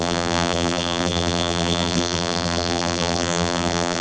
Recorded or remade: remade